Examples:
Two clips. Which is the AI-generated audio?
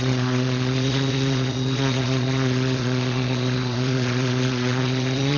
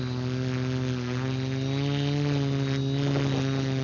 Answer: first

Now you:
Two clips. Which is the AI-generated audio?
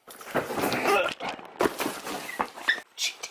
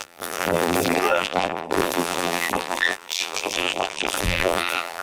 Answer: second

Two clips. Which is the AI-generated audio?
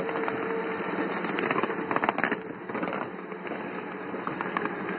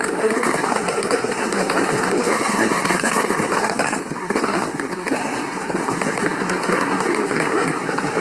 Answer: second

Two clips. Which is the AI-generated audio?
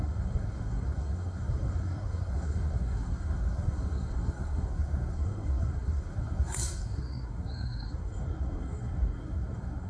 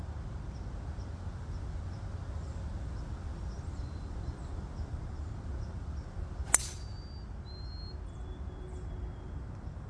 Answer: first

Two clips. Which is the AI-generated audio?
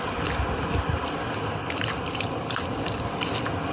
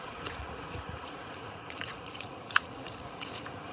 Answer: second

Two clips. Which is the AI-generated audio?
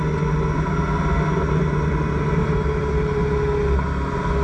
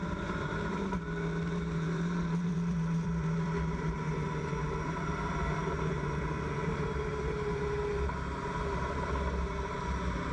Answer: second